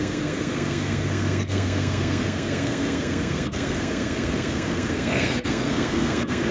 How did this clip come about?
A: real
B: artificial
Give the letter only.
B